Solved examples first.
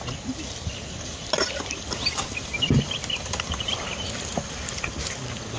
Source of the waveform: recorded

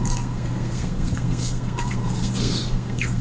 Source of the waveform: remade